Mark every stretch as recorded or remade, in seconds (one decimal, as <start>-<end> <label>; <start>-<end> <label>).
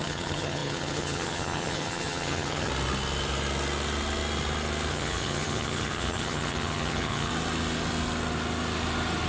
0.0-2.7 remade; 2.7-4.9 recorded; 4.9-7.3 remade; 7.3-9.3 recorded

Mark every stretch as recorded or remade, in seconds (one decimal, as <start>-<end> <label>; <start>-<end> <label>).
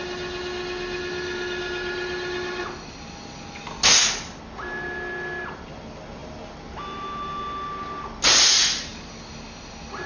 0.0-10.1 recorded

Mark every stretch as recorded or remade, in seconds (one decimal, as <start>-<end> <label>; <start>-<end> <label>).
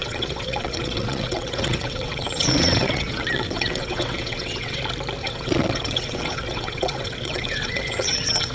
0.0-4.8 remade; 4.8-5.2 recorded; 5.2-8.5 remade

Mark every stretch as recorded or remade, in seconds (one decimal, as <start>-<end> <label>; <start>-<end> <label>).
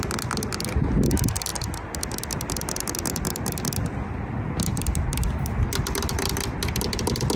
0.0-4.7 recorded; 4.7-5.5 remade; 5.5-7.4 recorded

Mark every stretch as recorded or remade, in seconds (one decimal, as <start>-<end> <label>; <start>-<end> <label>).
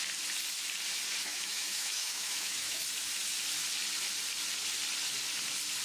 0.0-1.2 recorded; 1.2-2.8 remade; 2.8-5.8 recorded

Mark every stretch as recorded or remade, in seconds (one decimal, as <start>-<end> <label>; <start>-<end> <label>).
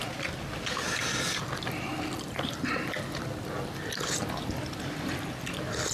0.0-5.9 recorded